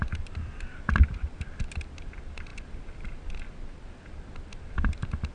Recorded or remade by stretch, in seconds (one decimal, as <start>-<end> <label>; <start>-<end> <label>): 0.0-5.3 recorded